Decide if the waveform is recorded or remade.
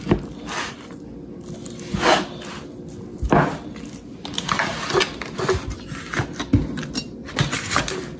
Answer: recorded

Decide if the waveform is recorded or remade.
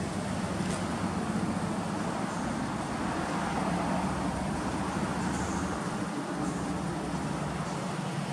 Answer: recorded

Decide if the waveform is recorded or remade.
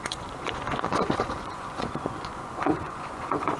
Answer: remade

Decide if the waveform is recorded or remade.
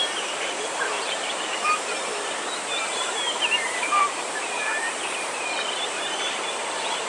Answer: remade